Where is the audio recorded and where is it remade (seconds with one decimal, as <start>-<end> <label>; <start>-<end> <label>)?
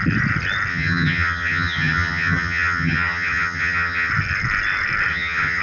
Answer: 0.0-0.7 recorded; 0.7-4.1 remade; 4.1-5.1 recorded; 5.1-5.6 remade